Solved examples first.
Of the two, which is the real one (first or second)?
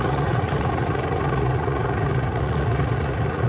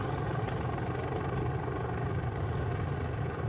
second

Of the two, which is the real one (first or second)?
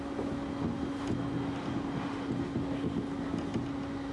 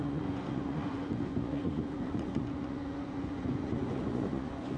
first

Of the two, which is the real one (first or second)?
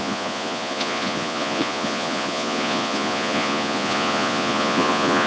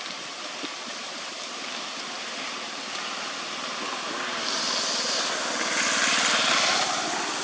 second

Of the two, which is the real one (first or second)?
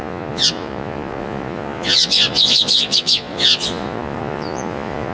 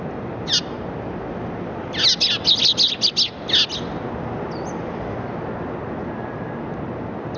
second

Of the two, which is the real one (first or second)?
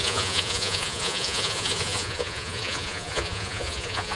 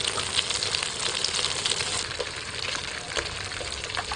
second